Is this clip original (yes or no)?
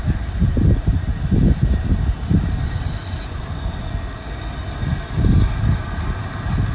yes